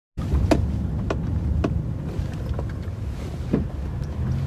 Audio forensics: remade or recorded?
recorded